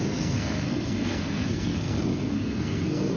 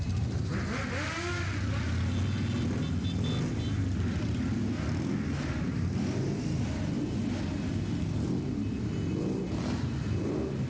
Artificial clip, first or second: first